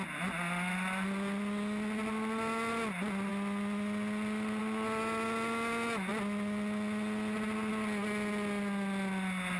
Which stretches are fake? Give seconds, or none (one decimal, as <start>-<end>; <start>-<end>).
none